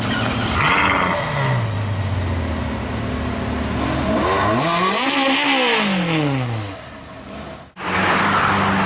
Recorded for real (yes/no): yes